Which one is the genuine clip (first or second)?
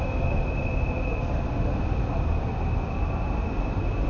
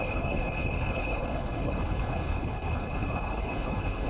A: first